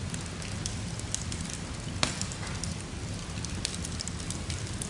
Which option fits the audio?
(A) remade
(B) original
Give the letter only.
B